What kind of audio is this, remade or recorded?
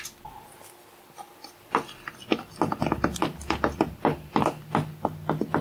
recorded